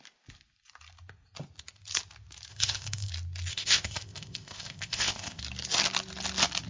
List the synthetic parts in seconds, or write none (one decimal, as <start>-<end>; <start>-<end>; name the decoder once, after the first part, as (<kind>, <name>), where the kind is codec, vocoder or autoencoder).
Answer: 2.5-3.1 (codec, ZipCodec); 3.5-5.4